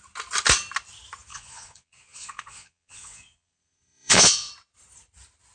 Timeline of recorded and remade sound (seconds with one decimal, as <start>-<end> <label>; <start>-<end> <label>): 0.0-1.3 recorded; 1.3-4.5 remade; 4.5-5.5 recorded